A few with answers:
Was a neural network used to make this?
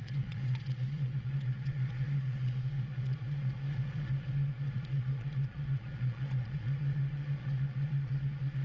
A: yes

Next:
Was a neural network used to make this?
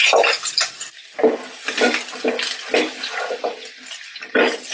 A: no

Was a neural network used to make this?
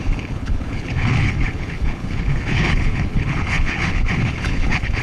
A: yes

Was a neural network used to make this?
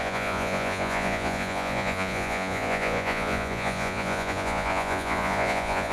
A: yes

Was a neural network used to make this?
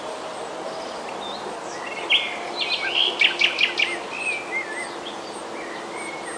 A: no